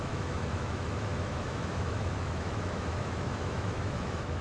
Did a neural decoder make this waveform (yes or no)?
yes